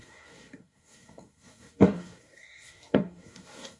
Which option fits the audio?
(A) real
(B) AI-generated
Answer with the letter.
B